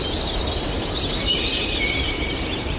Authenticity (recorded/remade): remade